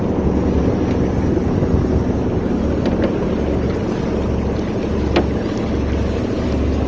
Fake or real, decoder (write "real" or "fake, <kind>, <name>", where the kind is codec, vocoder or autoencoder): real